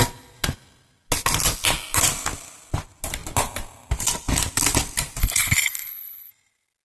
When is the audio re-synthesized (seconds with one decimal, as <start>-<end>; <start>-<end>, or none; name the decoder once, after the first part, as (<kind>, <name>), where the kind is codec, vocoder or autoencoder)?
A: 5.2-6.3 (codec, HILCodec)